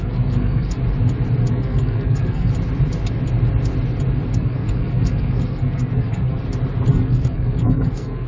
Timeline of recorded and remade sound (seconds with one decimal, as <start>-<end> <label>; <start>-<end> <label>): 0.0-0.8 remade; 0.8-1.5 recorded; 1.5-2.5 remade; 2.5-4.3 recorded; 4.3-6.4 remade; 6.4-6.9 recorded; 6.9-8.3 remade